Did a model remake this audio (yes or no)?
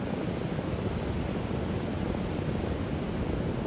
no